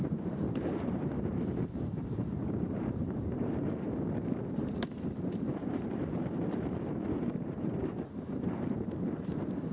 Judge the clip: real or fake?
fake